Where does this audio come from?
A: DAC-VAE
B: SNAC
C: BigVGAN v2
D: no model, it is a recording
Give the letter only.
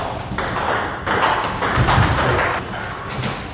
D